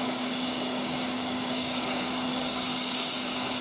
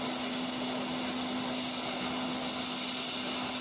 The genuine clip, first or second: second